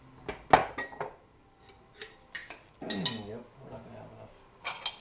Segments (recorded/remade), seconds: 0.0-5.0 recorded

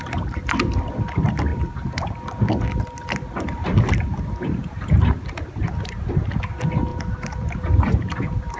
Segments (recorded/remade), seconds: 0.0-1.5 recorded; 1.5-2.6 remade; 2.6-3.6 recorded; 3.6-5.9 remade; 5.9-6.9 recorded; 6.9-8.6 remade

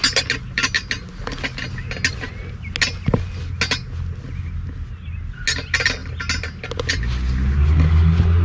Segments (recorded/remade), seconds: 0.0-8.4 recorded

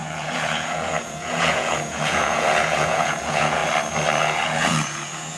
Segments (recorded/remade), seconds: 0.0-3.6 remade; 3.6-4.2 recorded; 4.2-5.4 remade

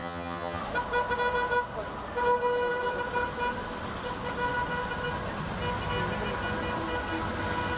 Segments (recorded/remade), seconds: 0.0-0.6 remade; 0.6-7.8 recorded

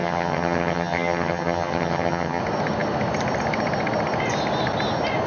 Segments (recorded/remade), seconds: 0.0-2.4 remade; 2.4-5.3 recorded

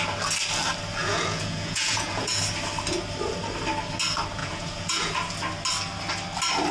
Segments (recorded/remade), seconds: 0.0-1.0 recorded; 1.0-2.4 remade; 2.4-4.4 recorded; 4.4-5.1 remade; 5.1-6.7 recorded

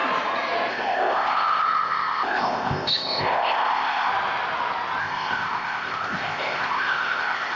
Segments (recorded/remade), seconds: 0.0-0.7 recorded; 0.7-4.1 remade; 4.1-5.0 recorded; 5.0-7.6 remade